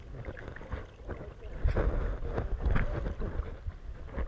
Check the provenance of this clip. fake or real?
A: real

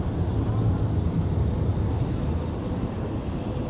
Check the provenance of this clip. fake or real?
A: real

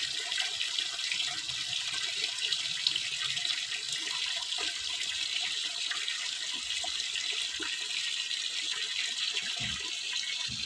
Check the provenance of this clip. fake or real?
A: real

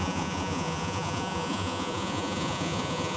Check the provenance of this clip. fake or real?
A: fake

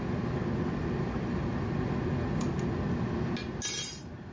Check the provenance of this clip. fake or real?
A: real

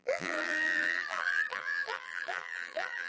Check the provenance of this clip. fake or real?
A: fake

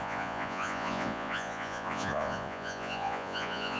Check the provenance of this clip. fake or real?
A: fake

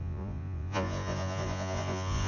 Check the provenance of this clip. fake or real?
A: fake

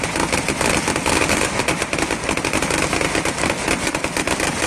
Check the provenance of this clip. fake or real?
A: real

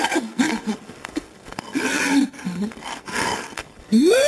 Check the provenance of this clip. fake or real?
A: fake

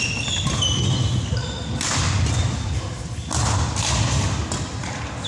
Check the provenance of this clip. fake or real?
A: real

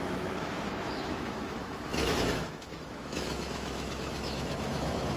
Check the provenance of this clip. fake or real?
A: fake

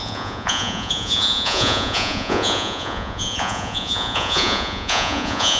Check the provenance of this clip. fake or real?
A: fake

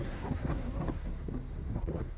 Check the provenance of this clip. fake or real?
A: fake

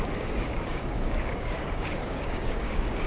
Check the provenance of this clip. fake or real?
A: fake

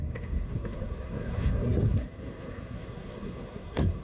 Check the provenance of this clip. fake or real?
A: fake